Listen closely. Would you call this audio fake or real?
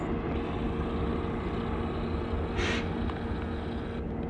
real